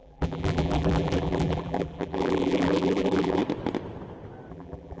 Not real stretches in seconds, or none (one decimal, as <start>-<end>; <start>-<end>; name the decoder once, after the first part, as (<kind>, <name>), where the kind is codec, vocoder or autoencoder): 0.0-3.4 (vocoder, BigVGAN v2); 4.5-5.0